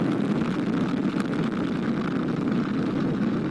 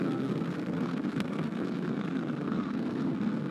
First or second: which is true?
first